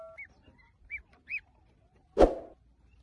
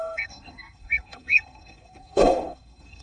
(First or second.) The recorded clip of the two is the first